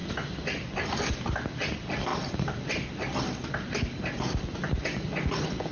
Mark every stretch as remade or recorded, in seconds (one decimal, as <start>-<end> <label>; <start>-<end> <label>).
0.0-5.7 recorded